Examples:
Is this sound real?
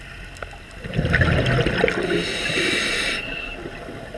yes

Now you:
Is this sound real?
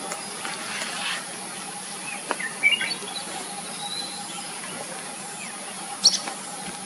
yes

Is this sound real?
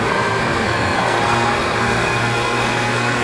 no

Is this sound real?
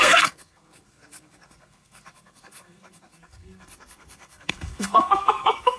no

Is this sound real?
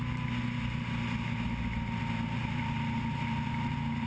yes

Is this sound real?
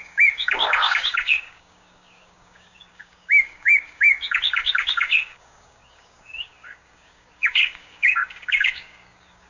no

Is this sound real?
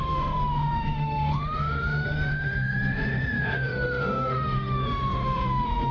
no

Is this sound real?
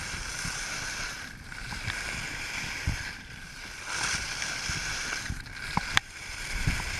no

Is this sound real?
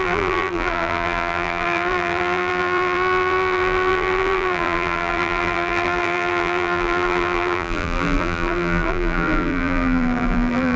no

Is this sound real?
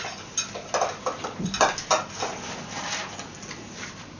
yes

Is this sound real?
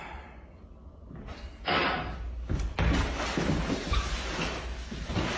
yes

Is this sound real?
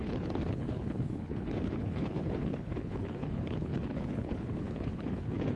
no